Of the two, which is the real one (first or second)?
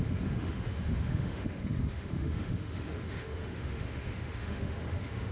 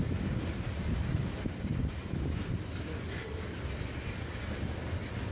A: second